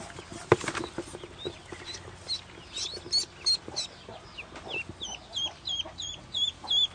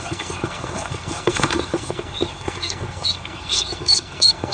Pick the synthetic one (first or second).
second